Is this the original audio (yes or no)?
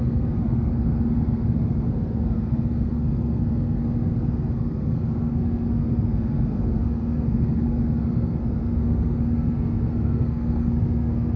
no